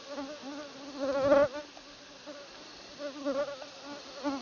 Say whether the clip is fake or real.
real